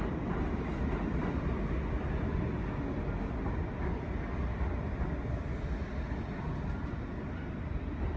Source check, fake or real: real